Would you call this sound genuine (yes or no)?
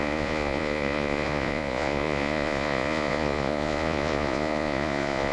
no